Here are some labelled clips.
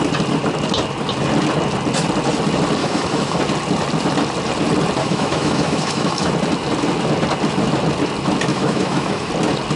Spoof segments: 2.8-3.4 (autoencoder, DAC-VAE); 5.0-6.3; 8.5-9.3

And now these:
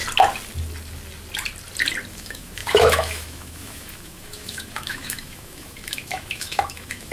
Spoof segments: 2.1-7.1 (autoencoder, DAC-VAE)

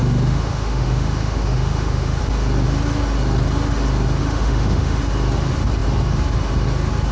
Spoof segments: 0.0-2.2 (autoencoder, DAC-VAE); 4.2-5.0